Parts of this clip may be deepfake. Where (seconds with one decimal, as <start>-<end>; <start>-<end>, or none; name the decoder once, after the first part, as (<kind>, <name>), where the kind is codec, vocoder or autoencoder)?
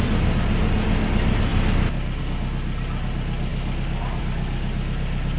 none